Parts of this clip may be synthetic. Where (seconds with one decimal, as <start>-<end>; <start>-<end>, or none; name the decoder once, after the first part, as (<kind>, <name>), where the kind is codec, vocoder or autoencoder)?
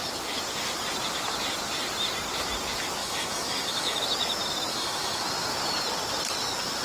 3.0-4.0 (autoencoder, DAC-VAE); 4.7-5.2